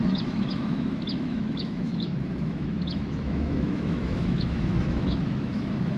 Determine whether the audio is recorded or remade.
remade